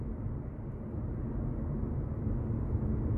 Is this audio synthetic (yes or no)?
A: no